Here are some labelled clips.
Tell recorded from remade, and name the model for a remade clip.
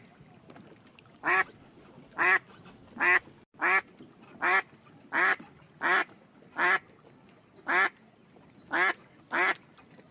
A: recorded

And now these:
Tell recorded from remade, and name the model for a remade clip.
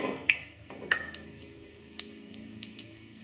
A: remade, codec, SNAC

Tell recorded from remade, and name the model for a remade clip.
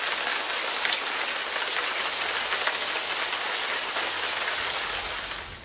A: recorded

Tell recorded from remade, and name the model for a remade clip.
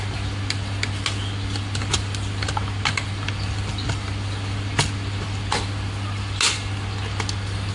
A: recorded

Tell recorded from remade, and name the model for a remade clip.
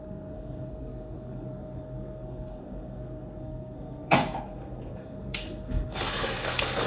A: remade, codec, SNAC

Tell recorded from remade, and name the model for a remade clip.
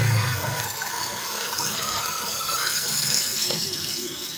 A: remade, codec, SNAC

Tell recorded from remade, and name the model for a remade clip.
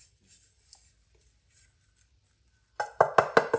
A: recorded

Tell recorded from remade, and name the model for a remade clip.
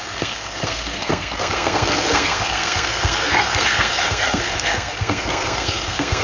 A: remade, codec, SNAC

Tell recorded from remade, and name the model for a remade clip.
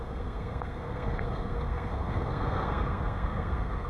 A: remade, codec, SNAC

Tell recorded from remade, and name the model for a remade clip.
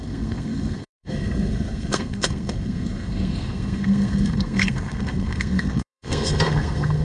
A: remade, codec, SNAC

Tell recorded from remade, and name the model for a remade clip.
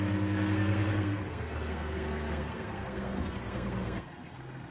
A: remade, codec, SNAC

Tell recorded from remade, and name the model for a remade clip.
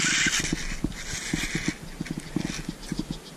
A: recorded